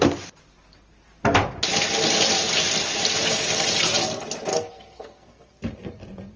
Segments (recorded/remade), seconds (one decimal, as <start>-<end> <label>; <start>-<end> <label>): 0.0-4.5 recorded; 4.5-5.5 remade; 5.5-6.4 recorded